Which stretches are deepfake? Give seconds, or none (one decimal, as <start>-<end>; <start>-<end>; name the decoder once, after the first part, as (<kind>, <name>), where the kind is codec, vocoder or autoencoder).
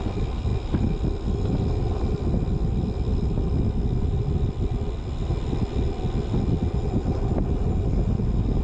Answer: none